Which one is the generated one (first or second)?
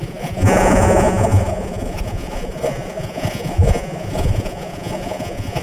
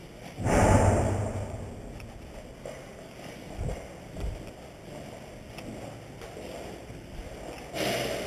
first